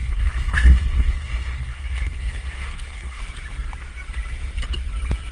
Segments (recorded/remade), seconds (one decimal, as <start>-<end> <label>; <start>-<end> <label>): 0.0-3.2 remade; 3.2-5.3 recorded